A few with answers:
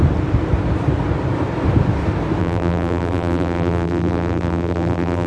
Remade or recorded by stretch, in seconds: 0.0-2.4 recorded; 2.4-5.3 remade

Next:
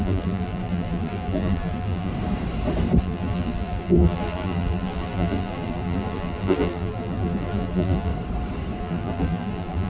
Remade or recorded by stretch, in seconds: 0.0-2.1 remade; 2.1-3.0 recorded; 3.0-8.1 remade; 8.1-8.8 recorded; 8.8-9.9 remade